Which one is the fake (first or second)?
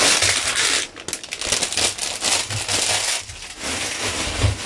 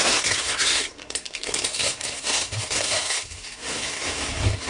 second